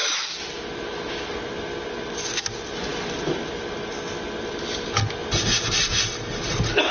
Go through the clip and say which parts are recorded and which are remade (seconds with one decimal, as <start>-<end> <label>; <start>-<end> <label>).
0.0-6.9 recorded